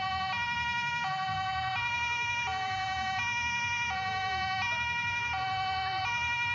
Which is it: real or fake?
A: real